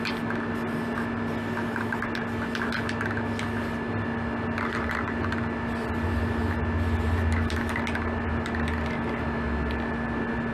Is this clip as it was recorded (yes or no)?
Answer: yes